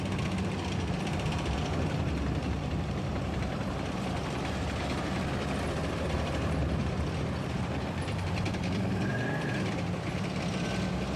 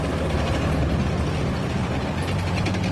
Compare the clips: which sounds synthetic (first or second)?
first